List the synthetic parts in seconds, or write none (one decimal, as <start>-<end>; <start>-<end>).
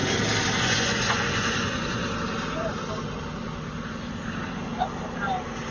0.6-2.0